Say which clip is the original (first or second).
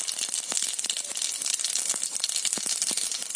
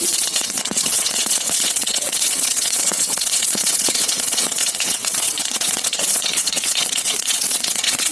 first